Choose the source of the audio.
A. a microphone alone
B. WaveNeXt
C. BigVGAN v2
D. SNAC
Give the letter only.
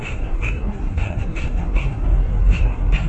D